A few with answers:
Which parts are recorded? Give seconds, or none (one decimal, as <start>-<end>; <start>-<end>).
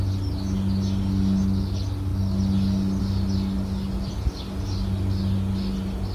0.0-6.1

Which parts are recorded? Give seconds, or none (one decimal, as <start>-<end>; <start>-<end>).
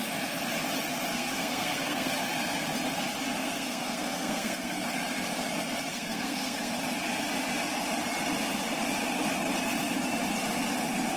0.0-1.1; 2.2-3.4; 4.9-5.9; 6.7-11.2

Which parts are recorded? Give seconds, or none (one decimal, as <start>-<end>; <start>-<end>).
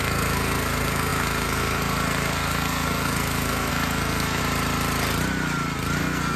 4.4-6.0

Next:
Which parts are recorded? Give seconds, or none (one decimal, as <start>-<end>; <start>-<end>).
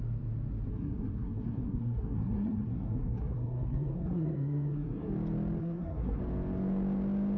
0.0-0.7; 5.1-5.6; 6.2-7.4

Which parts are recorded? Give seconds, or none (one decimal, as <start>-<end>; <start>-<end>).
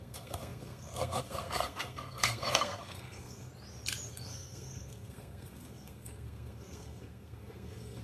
3.5-4.1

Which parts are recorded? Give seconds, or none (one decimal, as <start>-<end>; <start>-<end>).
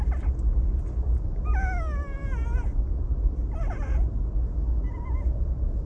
0.0-5.9